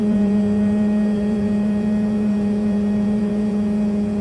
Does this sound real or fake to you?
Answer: fake